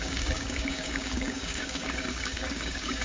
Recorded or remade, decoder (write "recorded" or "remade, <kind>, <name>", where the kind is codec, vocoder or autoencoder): remade, codec, DAC